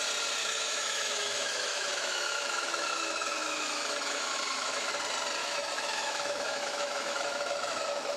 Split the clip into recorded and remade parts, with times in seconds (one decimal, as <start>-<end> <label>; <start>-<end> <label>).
0.0-0.4 recorded; 0.4-4.9 remade; 4.9-5.4 recorded; 5.4-8.2 remade